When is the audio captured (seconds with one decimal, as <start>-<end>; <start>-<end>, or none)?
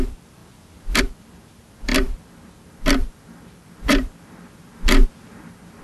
0.4-1.0; 1.9-2.6